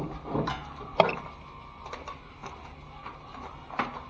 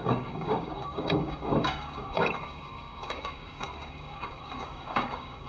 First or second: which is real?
first